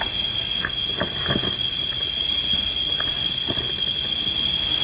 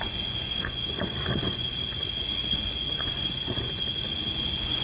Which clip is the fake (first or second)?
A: second